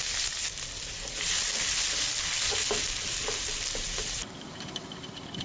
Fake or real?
real